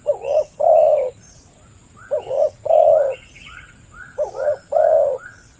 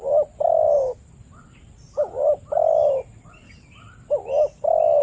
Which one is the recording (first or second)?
second